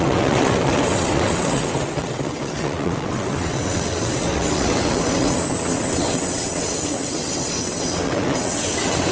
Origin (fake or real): fake